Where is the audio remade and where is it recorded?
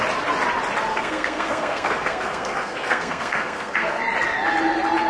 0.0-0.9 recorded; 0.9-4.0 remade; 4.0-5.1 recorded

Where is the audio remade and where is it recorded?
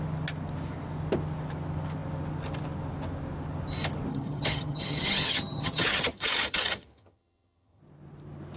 0.0-4.1 recorded; 4.1-7.8 remade; 7.8-8.6 recorded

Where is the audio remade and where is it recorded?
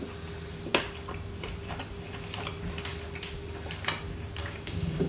0.0-4.4 recorded; 4.4-5.1 remade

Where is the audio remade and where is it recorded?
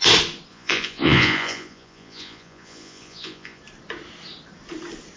0.0-0.5 recorded; 0.5-3.6 remade; 3.6-5.2 recorded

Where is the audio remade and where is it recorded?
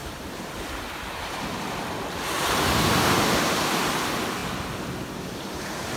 0.0-3.6 remade; 3.6-6.0 recorded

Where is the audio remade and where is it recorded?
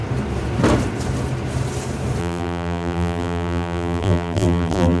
0.0-2.2 recorded; 2.2-5.0 remade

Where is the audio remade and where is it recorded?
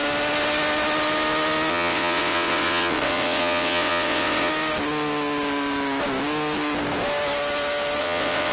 0.0-1.7 recorded; 1.7-4.5 remade; 4.5-8.0 recorded; 8.0-8.5 remade